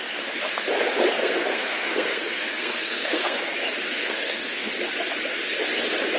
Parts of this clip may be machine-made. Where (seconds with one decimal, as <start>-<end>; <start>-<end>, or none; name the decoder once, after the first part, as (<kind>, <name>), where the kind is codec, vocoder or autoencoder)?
1.2-3.4 (codec, SNAC); 4.0-4.7